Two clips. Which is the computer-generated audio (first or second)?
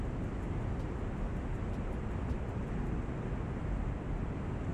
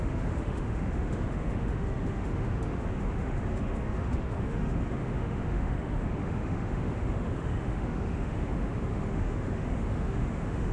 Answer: second